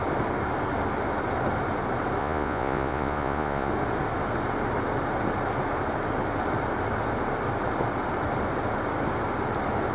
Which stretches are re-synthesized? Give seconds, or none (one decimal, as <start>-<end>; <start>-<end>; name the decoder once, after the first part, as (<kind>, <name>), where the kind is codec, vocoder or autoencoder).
2.2-3.7 (vocoder, Vocos)